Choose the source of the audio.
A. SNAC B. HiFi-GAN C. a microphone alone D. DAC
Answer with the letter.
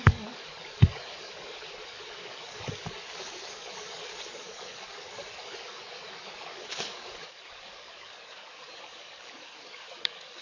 D